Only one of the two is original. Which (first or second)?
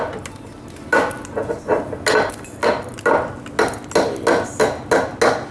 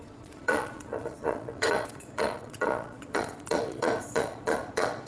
first